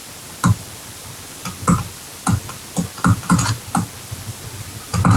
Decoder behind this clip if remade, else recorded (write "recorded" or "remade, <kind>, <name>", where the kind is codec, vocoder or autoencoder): recorded